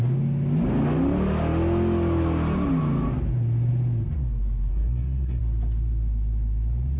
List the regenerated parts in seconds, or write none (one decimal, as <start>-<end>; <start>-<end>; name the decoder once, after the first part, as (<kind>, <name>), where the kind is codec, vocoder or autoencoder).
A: 4.7-5.4 (codec, SNAC)